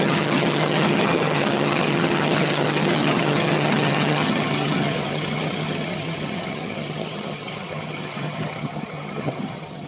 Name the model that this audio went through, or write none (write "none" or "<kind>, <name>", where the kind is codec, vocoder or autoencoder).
vocoder, HiFi-GAN